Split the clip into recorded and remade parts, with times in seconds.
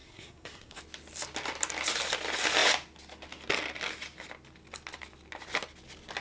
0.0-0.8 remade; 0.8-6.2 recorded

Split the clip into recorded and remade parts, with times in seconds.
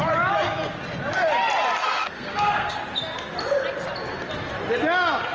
0.0-1.8 recorded; 1.8-2.8 remade; 2.8-5.3 recorded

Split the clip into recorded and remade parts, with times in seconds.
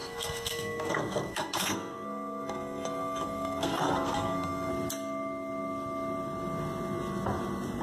0.0-4.7 remade; 4.7-7.8 recorded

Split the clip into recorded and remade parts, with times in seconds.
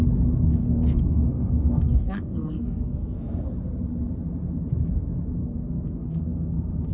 0.0-0.6 recorded; 0.6-3.5 remade; 3.5-5.4 recorded; 5.4-6.9 remade